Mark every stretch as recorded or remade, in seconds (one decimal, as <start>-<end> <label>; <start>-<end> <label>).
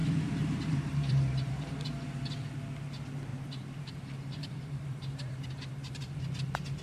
0.0-2.5 remade; 2.5-3.3 recorded; 3.3-6.2 remade; 6.2-6.8 recorded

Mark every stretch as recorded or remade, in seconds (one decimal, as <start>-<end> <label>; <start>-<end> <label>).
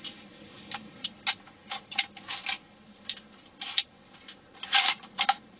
0.0-5.6 recorded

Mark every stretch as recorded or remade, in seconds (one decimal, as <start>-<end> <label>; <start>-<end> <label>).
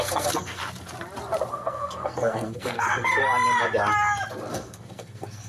0.0-0.6 remade; 0.6-1.5 recorded; 1.5-3.2 remade; 3.2-4.5 recorded; 4.5-5.5 remade